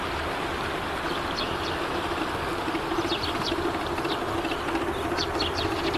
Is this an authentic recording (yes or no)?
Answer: no